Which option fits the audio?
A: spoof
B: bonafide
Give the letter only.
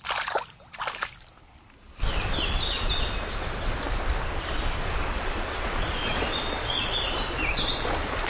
B